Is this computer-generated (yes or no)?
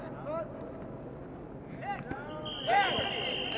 no